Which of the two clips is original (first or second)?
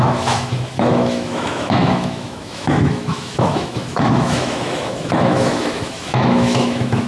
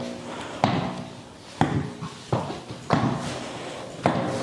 second